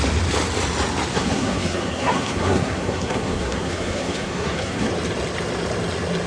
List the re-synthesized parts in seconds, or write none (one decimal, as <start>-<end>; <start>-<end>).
1.1-4.9